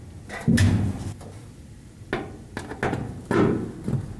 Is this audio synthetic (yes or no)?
no